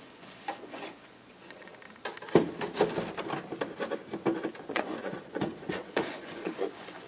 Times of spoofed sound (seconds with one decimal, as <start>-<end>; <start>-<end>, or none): 0.0-1.7; 4.6-7.1